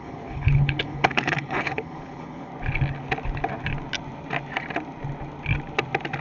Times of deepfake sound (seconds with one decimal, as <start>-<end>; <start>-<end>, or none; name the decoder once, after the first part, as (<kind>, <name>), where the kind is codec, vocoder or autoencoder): 0.0-2.5 (codec, HILCodec)